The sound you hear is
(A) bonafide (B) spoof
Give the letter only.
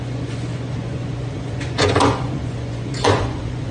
B